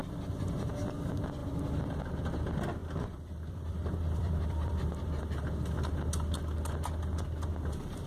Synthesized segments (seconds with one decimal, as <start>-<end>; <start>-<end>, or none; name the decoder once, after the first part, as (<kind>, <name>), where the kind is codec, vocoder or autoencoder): 0.0-0.7 (vocoder, BigVGAN v2); 2.8-5.1